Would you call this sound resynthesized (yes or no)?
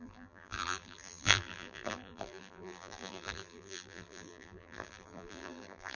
yes